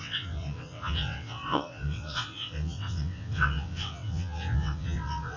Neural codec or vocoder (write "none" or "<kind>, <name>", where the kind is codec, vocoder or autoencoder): vocoder, WaveNeXt